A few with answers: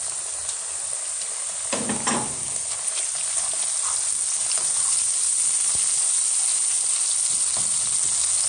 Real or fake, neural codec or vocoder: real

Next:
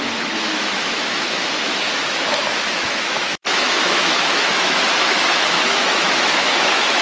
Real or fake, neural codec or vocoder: fake, autoencoder, DAC-VAE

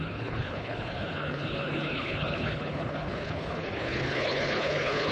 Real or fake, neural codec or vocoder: fake, codec, HILCodec